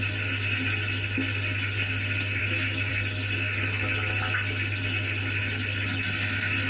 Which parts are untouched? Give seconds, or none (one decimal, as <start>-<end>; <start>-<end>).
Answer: 0.0-2.4; 2.9-6.7